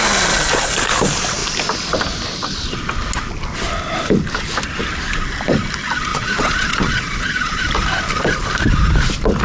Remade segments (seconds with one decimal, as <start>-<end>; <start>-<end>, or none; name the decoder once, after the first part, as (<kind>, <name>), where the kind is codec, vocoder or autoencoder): 6.1-7.6 (vocoder, Vocos)